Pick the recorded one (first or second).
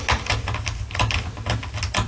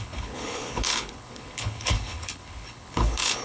first